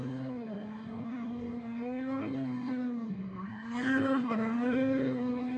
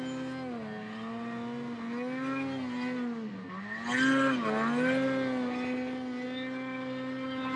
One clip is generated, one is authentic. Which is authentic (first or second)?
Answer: second